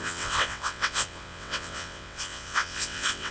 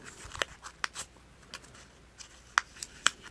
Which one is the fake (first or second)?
first